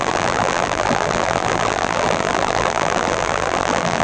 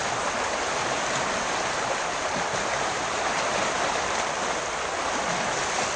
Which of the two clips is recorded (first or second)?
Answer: second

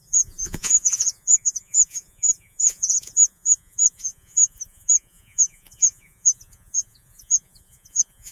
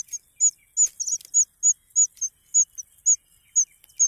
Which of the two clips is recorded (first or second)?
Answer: second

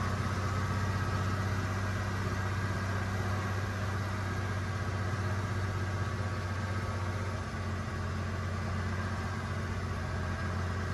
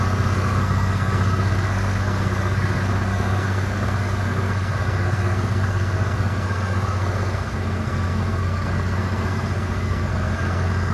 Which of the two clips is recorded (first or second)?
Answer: first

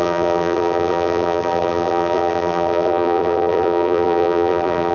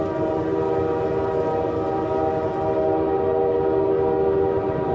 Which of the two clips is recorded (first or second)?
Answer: second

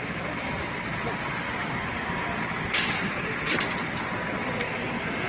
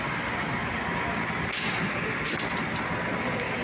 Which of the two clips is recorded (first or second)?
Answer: second